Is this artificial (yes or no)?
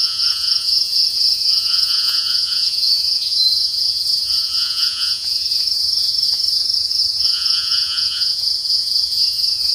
yes